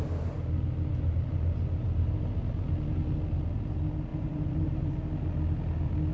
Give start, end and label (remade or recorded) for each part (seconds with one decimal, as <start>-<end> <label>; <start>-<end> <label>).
0.0-4.1 recorded; 4.1-4.9 remade; 4.9-6.1 recorded